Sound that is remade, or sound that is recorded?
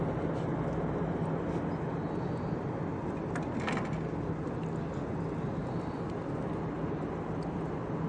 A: recorded